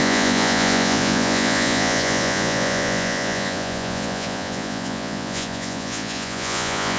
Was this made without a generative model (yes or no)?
no